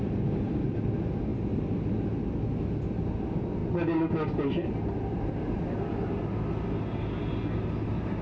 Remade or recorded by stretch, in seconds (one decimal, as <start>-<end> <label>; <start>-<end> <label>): 0.0-1.3 recorded; 1.3-2.3 remade; 2.3-8.2 recorded